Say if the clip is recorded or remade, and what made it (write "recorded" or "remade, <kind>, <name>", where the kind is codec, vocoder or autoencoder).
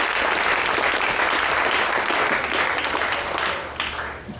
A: recorded